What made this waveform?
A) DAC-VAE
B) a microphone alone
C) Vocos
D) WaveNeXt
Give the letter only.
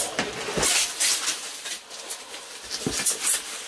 B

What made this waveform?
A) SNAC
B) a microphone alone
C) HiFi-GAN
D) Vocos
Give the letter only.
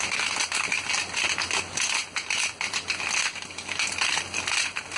B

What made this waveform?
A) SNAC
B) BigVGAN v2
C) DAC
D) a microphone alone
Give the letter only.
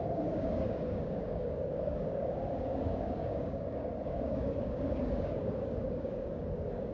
C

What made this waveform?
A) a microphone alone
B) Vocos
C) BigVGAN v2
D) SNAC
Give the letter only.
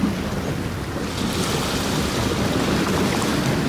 A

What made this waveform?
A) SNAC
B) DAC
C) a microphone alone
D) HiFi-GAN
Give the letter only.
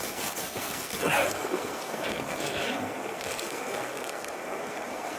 A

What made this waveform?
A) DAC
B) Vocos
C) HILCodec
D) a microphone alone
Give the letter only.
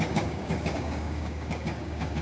A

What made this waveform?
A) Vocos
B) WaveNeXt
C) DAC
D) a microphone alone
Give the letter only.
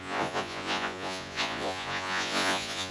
A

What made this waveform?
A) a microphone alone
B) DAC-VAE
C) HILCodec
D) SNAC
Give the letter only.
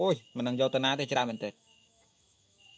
B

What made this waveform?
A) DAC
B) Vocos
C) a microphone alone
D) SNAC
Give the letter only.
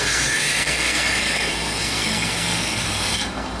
D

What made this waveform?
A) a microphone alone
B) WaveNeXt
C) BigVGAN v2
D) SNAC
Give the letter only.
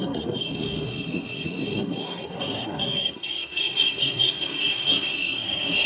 D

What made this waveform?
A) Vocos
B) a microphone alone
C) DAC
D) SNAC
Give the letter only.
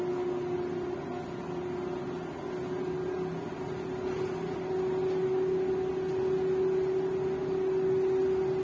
B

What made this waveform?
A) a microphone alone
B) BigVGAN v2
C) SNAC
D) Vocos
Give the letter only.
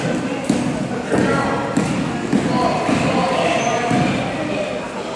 A